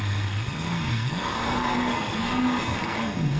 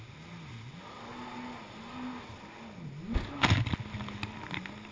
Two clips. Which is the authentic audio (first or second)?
second